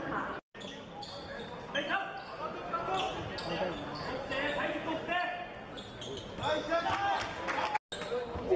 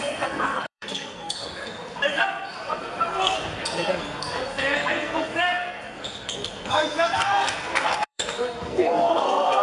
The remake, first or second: second